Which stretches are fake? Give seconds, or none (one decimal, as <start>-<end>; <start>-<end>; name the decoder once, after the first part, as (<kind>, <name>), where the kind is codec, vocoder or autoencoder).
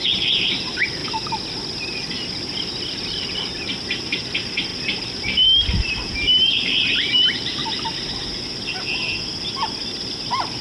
0.0-1.0 (vocoder, BigVGAN v2); 2.9-7.6; 10.1-10.6